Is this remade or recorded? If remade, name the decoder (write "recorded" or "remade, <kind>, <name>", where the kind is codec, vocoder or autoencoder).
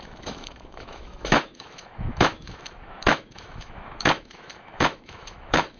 remade, autoencoder, DAC-VAE